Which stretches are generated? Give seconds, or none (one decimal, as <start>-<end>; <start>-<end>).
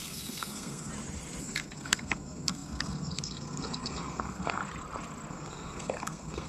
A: 0.0-0.9; 1.4-4.6; 5.3-6.5